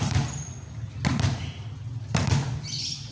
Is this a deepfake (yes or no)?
no